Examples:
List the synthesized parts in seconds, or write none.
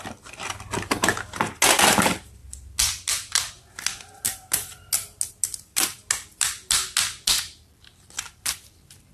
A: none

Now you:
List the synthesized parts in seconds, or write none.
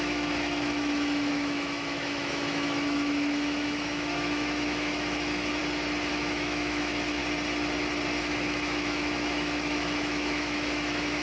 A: 0.0-5.6 (autoencoder, DAC-VAE); 6.1-7.2; 8.2-11.2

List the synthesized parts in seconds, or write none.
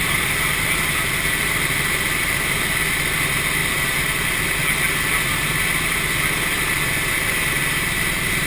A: none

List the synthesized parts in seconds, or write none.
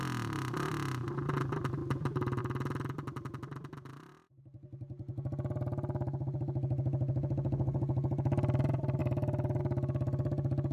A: 9.0-9.6 (autoencoder, DAC-VAE)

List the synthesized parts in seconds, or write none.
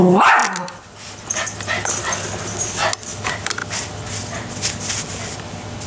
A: none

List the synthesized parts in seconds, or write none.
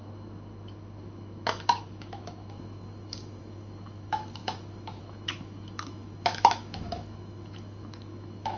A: 0.0-8.6 (autoencoder, DAC-VAE)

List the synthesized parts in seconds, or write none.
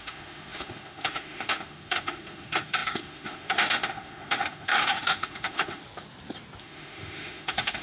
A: 0.0-5.8 (autoencoder, DAC-VAE); 6.6-7.8